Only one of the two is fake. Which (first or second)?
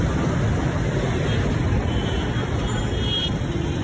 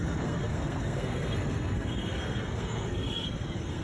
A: second